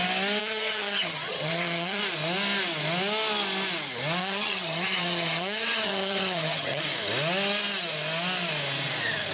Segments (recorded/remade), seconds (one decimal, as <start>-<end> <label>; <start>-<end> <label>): 0.0-0.4 recorded; 0.4-2.0 remade; 2.0-4.2 recorded; 4.2-6.8 remade; 6.8-9.3 recorded